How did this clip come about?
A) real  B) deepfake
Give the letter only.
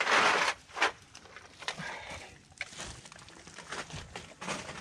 A